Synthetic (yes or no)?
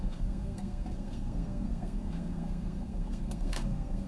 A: yes